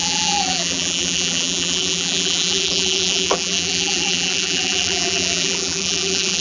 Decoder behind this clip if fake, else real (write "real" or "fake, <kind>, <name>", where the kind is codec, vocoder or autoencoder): fake, vocoder, BigVGAN v2